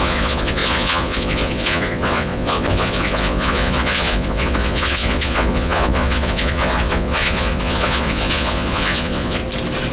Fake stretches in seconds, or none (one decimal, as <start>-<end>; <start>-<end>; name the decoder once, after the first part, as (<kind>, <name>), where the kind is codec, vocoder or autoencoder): 0.0-9.4 (vocoder, Vocos)